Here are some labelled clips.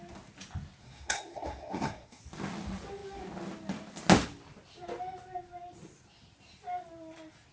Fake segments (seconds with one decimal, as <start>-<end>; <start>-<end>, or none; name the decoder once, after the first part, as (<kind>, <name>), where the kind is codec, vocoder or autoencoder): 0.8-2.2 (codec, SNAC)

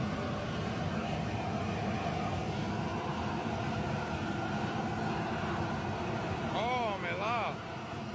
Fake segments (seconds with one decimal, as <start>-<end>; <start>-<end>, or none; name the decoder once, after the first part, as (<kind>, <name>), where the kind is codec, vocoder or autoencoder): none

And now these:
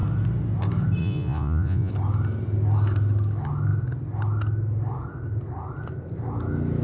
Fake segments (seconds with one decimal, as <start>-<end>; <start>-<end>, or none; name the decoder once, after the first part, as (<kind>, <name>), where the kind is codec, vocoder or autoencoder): 1.0-1.9 (vocoder, Vocos)

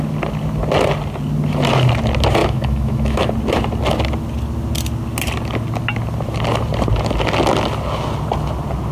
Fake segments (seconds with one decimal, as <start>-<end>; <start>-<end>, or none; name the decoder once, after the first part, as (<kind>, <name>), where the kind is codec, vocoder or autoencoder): 2.4-3.3 (autoencoder, DAC-VAE)

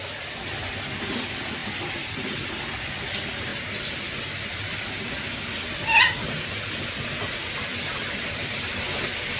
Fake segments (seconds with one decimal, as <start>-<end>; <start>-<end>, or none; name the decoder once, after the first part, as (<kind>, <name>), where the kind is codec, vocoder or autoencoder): 1.6-2.3 (vocoder, BigVGAN v2); 3.5-4.9; 7.7-9.4

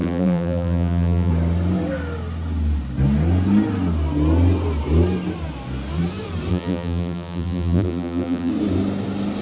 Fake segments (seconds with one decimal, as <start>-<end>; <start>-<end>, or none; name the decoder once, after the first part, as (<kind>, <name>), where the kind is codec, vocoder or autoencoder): 0.0-1.3 (vocoder, BigVGAN v2); 6.5-8.5